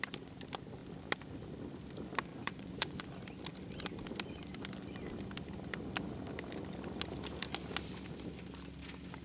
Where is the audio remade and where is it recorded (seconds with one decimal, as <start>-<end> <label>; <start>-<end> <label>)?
0.0-2.3 recorded; 2.3-3.0 remade; 3.0-9.2 recorded